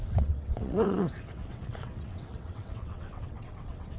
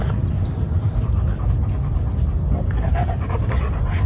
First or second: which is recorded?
second